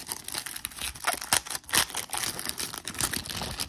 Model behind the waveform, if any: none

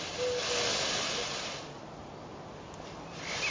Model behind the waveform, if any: none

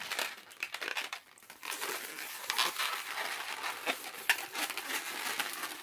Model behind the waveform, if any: none